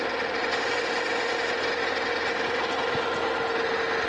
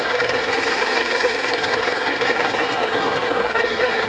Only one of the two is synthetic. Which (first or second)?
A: second